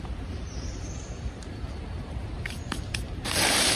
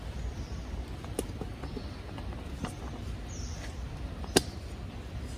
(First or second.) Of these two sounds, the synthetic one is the first